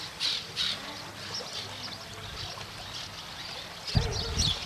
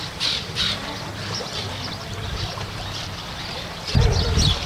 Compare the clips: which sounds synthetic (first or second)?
second